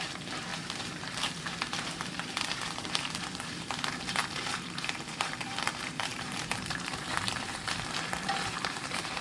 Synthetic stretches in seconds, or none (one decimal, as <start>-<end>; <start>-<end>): 0.0-9.2